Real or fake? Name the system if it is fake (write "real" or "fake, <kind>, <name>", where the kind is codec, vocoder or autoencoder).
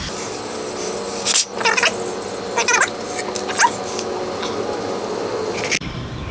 real